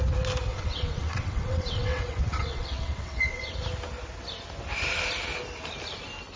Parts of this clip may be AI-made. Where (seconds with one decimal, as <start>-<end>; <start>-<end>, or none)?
0.5-3.5